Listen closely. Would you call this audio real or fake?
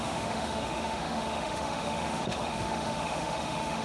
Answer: fake